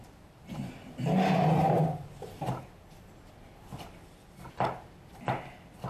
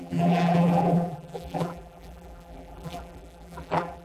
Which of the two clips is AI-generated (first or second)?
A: second